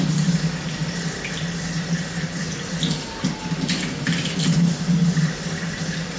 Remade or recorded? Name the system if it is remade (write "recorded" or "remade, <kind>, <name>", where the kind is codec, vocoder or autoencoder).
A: recorded